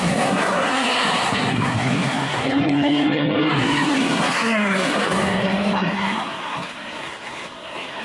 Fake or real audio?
fake